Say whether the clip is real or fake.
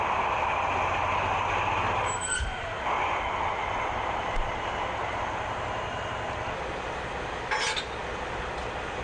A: real